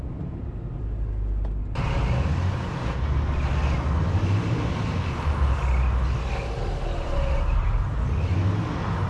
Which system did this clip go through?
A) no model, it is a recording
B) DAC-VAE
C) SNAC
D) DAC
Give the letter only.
A